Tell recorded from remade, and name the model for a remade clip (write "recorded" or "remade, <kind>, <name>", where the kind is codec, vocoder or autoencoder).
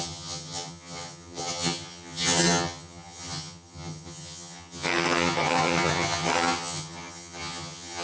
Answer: remade, vocoder, HiFi-GAN